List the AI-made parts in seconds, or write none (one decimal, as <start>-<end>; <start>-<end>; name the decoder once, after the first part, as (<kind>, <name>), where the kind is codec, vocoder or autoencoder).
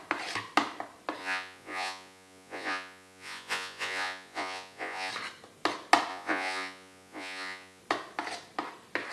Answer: 1.2-5.1 (vocoder, Vocos); 6.1-7.8